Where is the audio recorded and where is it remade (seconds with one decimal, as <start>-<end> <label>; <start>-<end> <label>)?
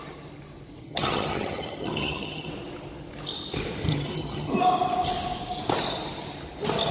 0.0-0.8 recorded; 0.8-2.5 remade; 2.5-3.9 recorded; 3.9-4.5 remade; 4.5-6.9 recorded